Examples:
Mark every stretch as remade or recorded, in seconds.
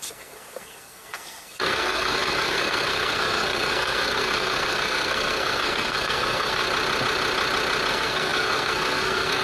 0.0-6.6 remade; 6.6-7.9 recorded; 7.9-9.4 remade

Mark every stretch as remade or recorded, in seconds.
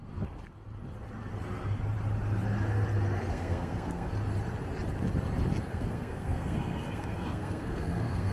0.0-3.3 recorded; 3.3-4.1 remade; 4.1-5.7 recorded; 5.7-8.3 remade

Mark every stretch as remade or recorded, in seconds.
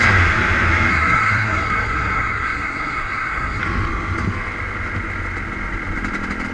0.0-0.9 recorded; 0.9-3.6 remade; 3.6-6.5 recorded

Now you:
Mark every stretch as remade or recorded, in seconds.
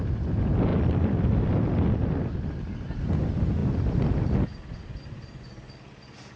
0.0-6.4 recorded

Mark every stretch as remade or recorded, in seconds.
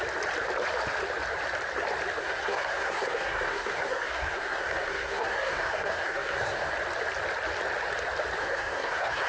0.0-2.2 recorded; 2.2-6.7 remade; 6.7-8.4 recorded; 8.4-9.3 remade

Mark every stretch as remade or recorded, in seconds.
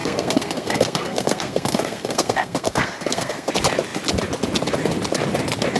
0.0-3.5 remade; 3.5-5.8 recorded